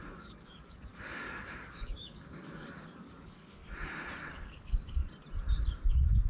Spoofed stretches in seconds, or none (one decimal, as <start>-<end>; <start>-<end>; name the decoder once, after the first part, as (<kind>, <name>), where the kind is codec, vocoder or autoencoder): 0.0-3.6 (codec, DAC); 4.3-5.0